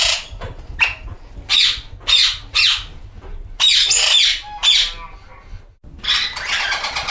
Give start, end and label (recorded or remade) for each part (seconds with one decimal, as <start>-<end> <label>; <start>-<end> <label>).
0.0-7.1 recorded